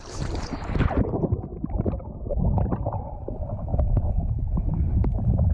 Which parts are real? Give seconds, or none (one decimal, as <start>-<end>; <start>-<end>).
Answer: 1.5-3.1; 3.7-4.4